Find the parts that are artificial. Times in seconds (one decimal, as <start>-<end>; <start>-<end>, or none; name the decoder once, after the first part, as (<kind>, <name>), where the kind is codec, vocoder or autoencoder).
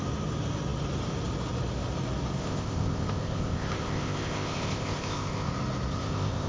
2.4-5.5 (codec, ZipCodec); 5.9-6.5